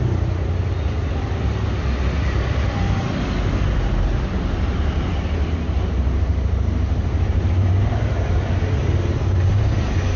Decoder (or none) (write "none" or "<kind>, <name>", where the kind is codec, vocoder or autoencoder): none